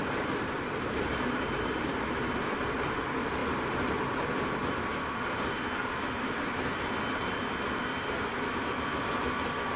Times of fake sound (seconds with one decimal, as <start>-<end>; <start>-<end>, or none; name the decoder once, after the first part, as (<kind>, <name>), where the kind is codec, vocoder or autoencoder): 1.1-3.0 (vocoder, BigVGAN v2)